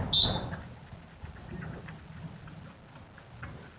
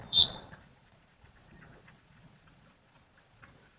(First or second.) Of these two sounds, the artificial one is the second